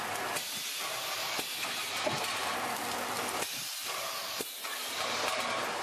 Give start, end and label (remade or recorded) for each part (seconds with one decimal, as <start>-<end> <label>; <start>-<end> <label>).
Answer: 0.0-1.2 recorded; 1.2-1.9 remade; 1.9-2.4 recorded; 2.4-4.3 remade; 4.3-5.8 recorded